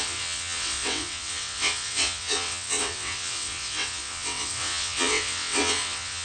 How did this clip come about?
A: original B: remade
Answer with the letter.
B